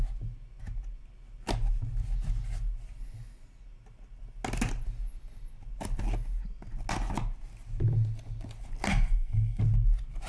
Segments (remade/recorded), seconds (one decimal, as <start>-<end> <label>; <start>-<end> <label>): 0.0-8.9 recorded; 8.9-9.6 remade; 9.6-10.3 recorded